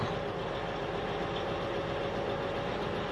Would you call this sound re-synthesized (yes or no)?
no